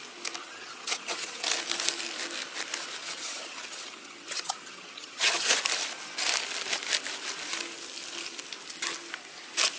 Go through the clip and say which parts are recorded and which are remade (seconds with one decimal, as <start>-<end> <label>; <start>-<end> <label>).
0.0-0.4 recorded; 0.4-1.4 remade; 1.4-3.0 recorded; 3.0-5.6 remade; 5.6-9.8 recorded